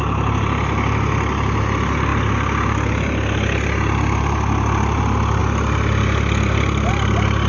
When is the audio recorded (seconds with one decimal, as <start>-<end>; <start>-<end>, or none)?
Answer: 0.0-7.5